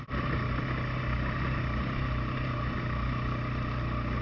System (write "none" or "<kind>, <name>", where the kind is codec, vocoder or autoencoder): none